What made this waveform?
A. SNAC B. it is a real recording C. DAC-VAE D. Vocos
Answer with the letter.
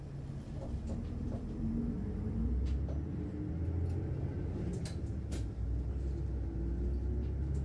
B